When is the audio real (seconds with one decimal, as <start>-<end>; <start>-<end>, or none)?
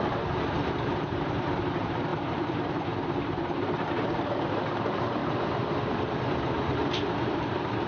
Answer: 5.2-6.0